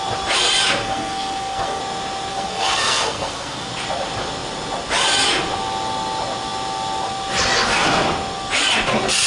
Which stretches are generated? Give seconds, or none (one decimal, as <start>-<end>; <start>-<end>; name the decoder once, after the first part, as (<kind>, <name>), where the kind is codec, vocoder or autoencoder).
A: 0.8-1.8 (codec, SNAC); 2.3-3.7